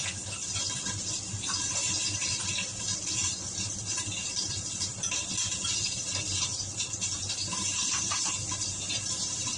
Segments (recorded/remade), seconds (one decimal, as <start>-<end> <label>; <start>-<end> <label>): 0.0-9.6 recorded